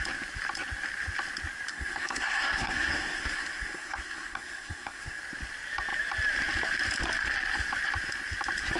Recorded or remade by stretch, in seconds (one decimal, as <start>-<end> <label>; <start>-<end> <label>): 0.0-1.7 recorded; 1.7-5.2 remade; 5.2-8.8 recorded